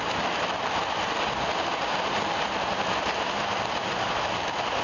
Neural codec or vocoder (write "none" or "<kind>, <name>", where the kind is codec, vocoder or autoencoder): none